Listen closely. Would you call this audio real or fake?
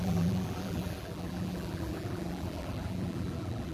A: fake